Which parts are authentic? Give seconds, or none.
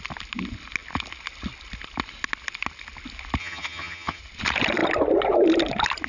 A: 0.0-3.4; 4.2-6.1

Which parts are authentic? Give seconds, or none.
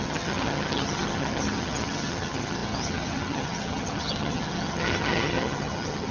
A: none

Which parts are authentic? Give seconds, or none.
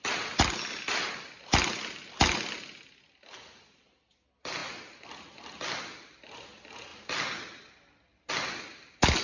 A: 0.0-9.2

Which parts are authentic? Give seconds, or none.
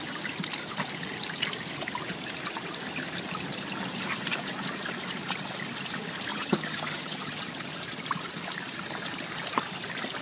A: 0.0-6.3; 7.4-10.2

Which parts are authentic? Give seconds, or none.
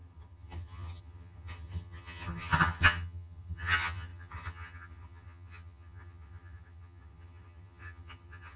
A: none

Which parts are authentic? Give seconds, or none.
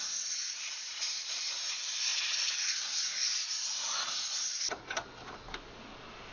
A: 0.0-6.3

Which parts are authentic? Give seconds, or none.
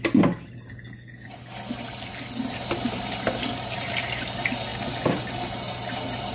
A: 0.0-6.3